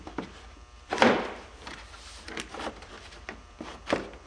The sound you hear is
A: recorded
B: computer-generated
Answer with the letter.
B